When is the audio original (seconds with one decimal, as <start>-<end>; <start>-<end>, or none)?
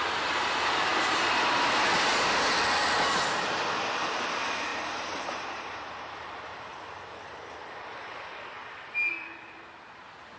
0.0-4.7; 6.3-10.4